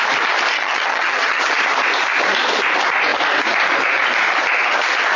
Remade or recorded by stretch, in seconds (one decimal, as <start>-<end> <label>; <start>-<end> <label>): 0.0-0.5 recorded; 0.5-1.4 remade; 1.4-5.2 recorded